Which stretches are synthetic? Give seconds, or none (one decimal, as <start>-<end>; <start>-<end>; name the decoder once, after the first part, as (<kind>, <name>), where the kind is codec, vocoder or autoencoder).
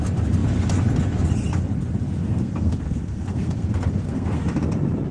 2.2-4.4 (codec, SNAC)